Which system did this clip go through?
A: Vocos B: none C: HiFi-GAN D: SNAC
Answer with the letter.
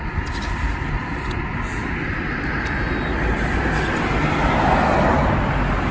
B